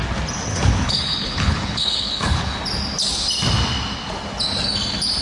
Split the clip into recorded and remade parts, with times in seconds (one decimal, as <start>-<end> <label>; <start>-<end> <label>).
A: 0.0-0.5 recorded; 0.5-2.6 remade; 2.6-5.2 recorded